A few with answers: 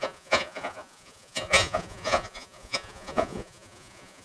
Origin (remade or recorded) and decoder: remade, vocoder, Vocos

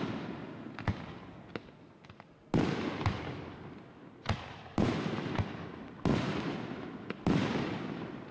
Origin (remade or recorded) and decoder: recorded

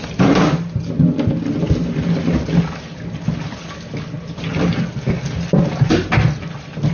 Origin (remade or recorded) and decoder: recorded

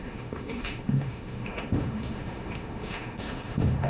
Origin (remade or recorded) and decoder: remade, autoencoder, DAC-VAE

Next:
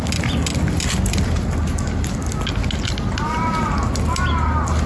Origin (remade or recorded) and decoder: recorded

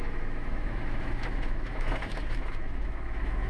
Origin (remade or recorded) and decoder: remade, autoencoder, DAC-VAE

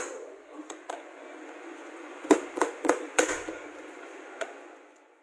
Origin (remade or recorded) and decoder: remade, vocoder, Vocos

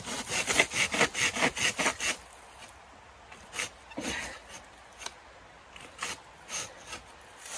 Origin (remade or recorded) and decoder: recorded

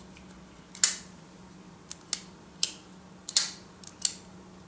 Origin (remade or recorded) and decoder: recorded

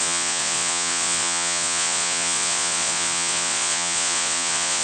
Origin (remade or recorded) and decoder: remade, vocoder, Vocos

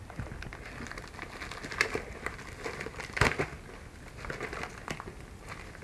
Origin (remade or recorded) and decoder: recorded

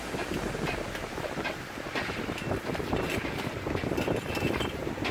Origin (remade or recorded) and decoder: recorded